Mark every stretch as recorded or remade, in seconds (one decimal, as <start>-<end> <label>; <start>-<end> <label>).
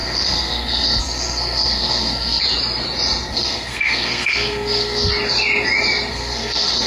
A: 0.0-2.4 remade; 2.4-3.3 recorded; 3.3-5.1 remade; 5.1-6.1 recorded; 6.1-6.9 remade